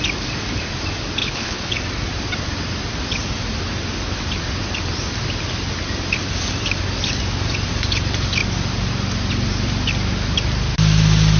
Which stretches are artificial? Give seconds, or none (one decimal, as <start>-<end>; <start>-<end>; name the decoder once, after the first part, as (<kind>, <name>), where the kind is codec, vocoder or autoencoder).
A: 1.2-1.7 (codec, HILCodec)

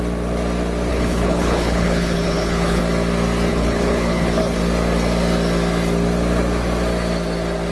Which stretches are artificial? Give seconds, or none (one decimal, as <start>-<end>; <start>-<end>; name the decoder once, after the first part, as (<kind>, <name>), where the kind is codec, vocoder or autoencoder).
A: 0.9-2.8 (codec, HILCodec); 3.5-4.6

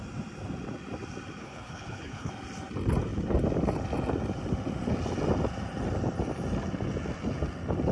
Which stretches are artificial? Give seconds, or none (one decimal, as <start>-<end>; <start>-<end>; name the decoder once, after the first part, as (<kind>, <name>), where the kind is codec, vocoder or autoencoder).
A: 1.4-2.3 (codec, HILCodec)

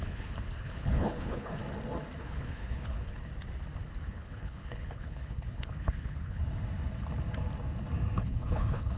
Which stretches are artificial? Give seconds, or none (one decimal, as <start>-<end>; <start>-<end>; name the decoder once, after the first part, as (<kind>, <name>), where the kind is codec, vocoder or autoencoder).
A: 0.0-1.6 (codec, HILCodec); 2.2-3.3; 4.1-6.4; 8.2-9.0

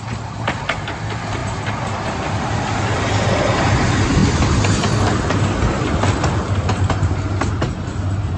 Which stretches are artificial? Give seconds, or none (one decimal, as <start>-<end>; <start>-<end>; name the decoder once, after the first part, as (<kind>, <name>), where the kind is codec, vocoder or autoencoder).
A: none

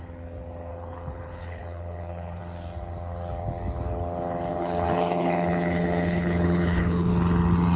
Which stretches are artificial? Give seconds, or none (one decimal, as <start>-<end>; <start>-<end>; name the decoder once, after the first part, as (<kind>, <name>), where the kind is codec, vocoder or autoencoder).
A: 0.7-2.4 (codec, HILCodec); 4.5-7.1

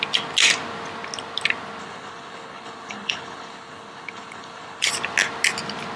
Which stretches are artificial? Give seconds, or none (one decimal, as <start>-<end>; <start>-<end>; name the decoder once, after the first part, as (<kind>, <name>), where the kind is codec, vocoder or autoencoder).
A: 1.8-4.9 (codec, HILCodec)

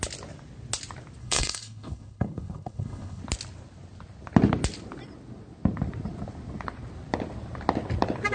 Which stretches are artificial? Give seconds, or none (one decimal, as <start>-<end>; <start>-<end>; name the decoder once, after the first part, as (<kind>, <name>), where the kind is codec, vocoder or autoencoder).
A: 1.2-3.2 (codec, HILCodec)